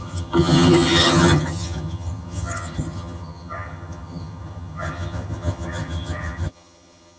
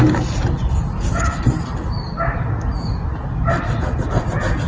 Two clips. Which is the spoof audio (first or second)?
first